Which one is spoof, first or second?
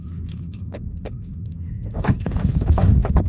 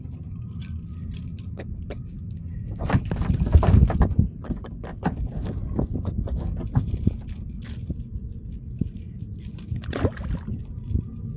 first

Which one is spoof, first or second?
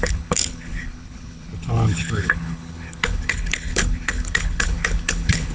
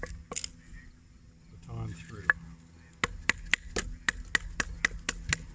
first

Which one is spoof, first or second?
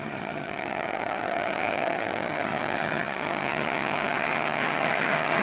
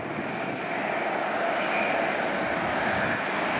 first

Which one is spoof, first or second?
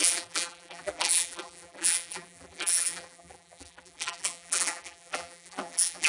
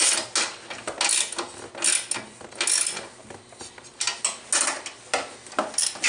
first